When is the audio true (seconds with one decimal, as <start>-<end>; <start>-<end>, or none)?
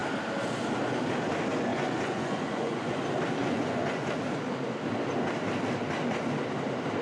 0.0-1.7; 3.0-3.4; 4.2-7.0